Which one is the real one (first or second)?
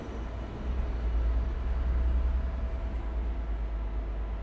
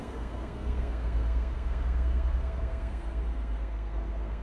first